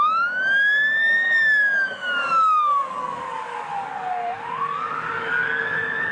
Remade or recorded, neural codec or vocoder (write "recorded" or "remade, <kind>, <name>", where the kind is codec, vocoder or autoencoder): remade, codec, DAC